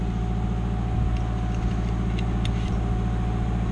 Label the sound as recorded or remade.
recorded